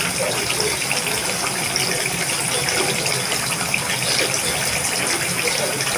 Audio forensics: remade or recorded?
recorded